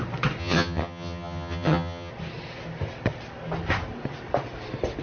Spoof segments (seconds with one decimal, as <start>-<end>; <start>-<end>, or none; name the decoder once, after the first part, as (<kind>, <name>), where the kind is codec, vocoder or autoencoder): 0.4-2.1 (vocoder, HiFi-GAN)